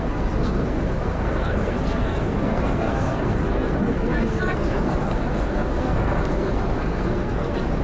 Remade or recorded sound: remade